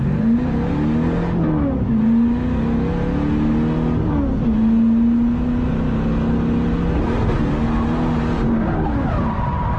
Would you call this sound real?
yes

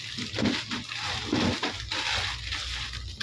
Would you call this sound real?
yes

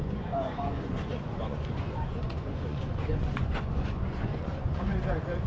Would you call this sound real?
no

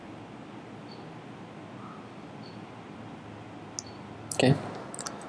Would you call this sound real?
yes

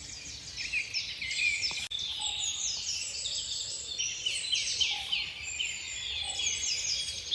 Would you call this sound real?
yes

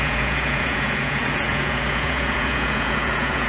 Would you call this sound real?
no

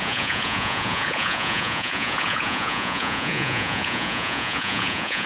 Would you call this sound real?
no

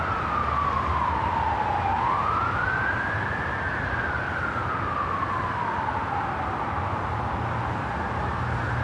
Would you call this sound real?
yes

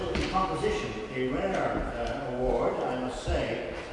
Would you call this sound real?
yes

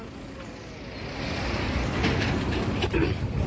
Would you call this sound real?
yes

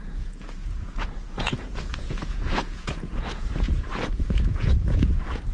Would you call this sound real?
no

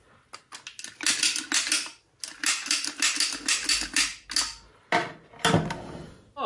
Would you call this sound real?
yes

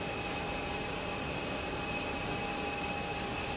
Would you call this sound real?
yes